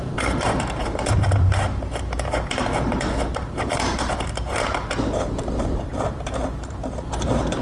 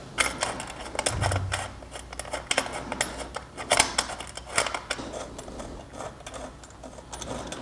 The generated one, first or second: first